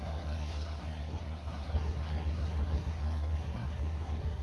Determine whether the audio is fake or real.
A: fake